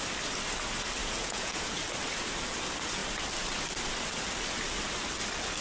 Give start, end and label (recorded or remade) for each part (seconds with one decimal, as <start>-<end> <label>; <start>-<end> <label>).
0.0-1.0 recorded; 1.0-1.8 remade; 1.8-5.6 recorded